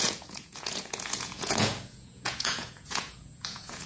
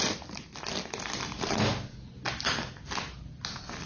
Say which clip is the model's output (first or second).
first